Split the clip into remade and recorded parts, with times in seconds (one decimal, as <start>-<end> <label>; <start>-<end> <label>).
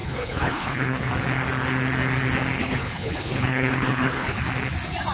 0.0-1.1 remade; 1.1-2.6 recorded; 2.6-4.4 remade; 4.4-5.1 recorded